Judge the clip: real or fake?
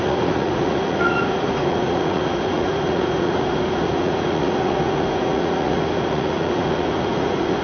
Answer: fake